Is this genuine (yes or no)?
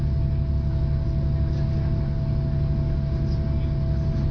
yes